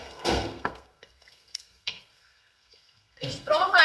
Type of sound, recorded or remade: remade